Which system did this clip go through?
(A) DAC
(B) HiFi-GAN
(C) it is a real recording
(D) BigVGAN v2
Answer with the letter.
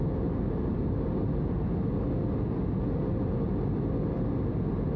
C